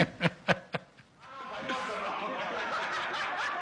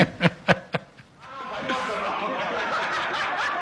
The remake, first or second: second